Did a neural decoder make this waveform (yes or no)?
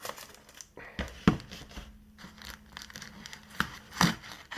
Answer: no